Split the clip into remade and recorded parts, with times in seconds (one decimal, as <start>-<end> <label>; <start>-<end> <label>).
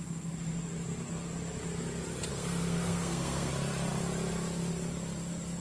0.0-2.3 recorded; 2.3-3.5 remade; 3.5-5.6 recorded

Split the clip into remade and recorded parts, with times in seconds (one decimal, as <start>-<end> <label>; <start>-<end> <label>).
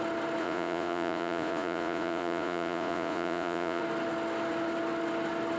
0.0-0.4 recorded; 0.4-3.8 remade; 3.8-5.6 recorded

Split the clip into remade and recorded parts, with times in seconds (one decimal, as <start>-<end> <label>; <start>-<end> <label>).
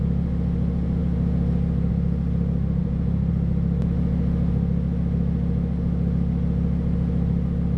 0.0-2.8 recorded; 2.8-3.3 remade; 3.3-7.8 recorded